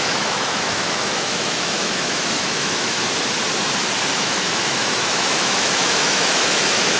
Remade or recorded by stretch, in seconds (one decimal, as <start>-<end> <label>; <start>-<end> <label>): 0.0-3.0 remade; 3.0-4.1 recorded; 4.1-7.0 remade